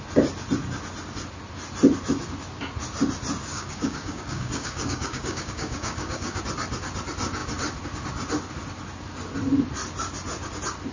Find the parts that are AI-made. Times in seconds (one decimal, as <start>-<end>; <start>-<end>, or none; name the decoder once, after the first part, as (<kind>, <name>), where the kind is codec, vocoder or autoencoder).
3.5-6.4 (codec, DAC)